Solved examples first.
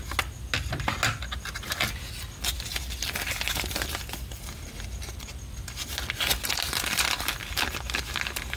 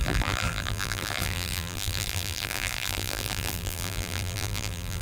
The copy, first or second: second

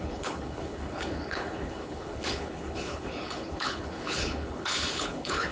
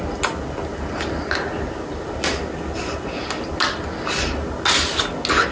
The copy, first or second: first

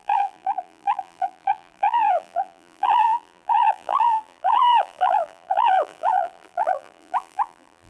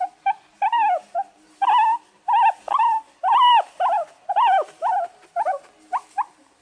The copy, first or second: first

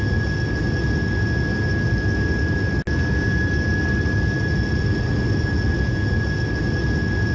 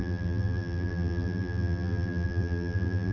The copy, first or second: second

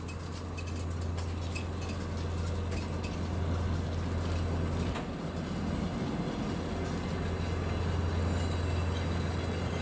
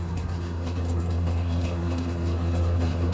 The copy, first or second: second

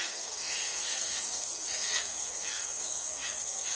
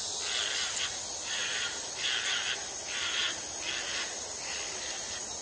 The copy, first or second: first